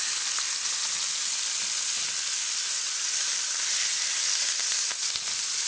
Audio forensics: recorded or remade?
recorded